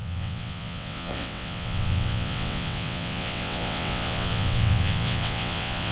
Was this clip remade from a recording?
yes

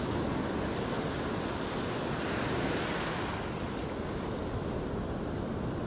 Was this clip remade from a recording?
no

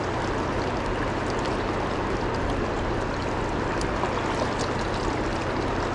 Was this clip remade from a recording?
no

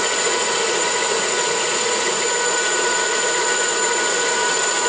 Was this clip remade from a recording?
yes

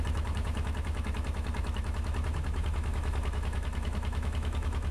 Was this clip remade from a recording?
yes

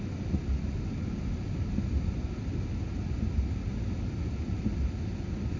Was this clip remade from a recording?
no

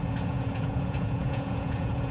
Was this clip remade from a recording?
yes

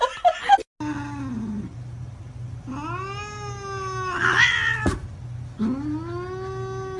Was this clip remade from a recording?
no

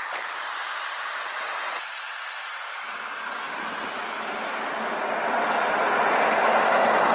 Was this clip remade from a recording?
no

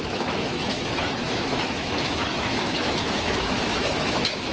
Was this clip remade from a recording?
yes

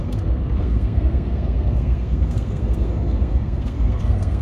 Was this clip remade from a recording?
yes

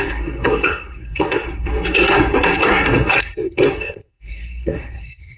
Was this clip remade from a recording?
yes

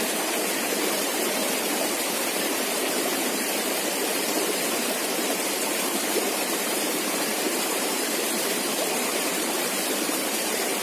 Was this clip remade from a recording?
yes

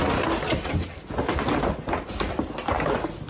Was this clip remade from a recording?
no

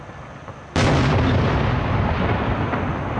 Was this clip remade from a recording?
no